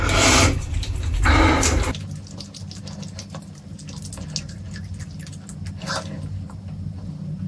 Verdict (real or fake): real